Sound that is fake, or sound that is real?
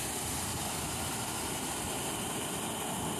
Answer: real